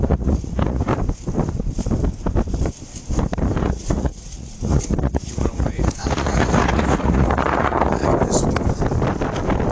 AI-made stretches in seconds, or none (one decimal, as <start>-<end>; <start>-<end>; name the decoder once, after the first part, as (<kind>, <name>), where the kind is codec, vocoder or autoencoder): 0.0-0.9 (vocoder, Vocos); 3.6-8.1